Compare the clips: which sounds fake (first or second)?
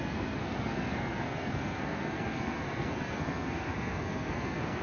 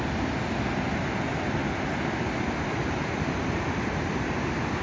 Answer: first